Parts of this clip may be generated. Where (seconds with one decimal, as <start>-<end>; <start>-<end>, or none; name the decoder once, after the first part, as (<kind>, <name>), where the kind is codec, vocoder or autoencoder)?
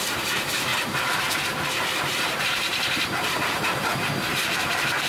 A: 0.0-0.7 (vocoder, BigVGAN v2); 2.0-5.1